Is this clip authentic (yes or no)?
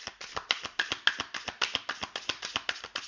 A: yes